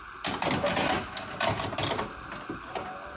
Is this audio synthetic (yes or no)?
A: no